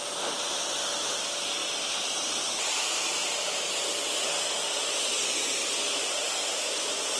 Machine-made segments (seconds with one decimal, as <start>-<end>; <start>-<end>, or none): none

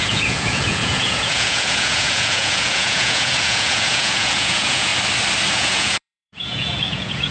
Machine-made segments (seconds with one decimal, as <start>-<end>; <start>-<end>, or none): 0.0-4.9; 5.5-7.3

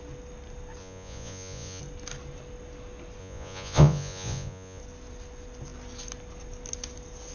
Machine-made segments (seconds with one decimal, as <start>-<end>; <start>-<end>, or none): 0.8-1.8; 3.2-4.8

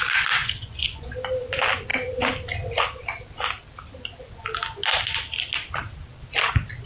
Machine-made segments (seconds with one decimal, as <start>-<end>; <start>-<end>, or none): 0.4-1.1

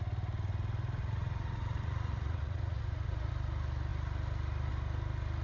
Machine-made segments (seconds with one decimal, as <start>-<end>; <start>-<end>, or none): 1.0-3.3